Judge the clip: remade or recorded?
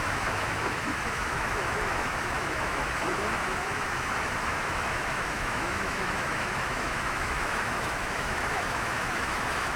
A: remade